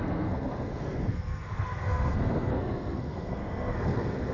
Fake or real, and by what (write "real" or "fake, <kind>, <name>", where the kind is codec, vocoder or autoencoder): fake, codec, SNAC